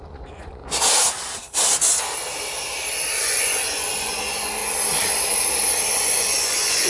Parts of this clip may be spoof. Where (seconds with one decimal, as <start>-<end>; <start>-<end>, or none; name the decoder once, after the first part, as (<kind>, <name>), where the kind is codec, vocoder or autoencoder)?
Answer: 0.0-0.6 (vocoder, Vocos); 3.2-4.6; 5.9-6.9